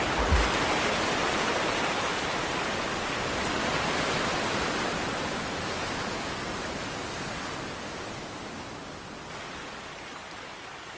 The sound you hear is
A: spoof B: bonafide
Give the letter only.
B